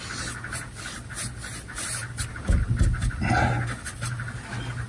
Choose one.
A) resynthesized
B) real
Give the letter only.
B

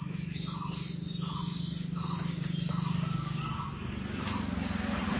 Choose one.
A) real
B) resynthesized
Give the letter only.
A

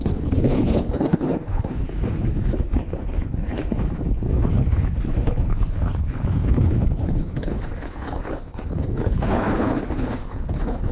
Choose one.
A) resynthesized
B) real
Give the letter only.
A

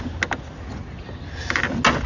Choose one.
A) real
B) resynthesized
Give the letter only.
A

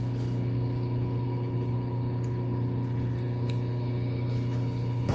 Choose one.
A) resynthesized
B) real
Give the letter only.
A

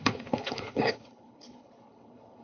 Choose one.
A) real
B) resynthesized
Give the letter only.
B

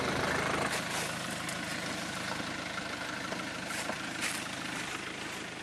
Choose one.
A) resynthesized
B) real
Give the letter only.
B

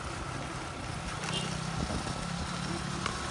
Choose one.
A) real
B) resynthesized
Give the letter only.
A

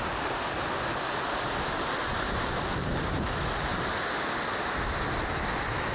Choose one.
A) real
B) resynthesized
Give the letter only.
A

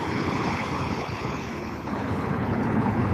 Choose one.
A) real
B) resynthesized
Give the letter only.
B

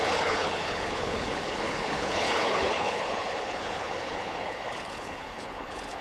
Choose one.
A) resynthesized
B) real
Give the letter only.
A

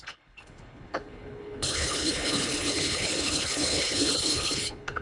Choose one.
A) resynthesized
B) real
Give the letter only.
A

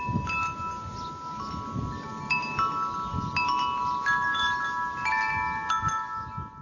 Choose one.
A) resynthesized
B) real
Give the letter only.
B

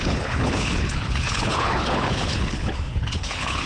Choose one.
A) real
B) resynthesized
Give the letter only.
B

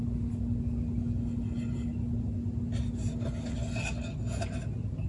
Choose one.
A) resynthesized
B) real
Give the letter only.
B